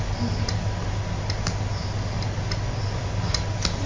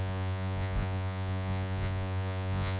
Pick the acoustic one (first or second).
first